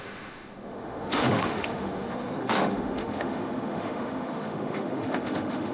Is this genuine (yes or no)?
no